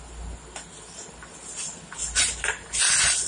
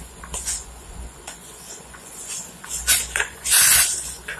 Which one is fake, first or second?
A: second